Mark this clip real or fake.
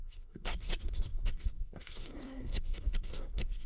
fake